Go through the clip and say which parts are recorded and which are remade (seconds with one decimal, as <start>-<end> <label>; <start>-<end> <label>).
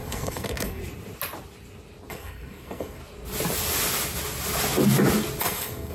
0.0-0.8 remade; 0.8-2.1 recorded; 2.1-3.0 remade; 3.0-5.4 recorded; 5.4-5.9 remade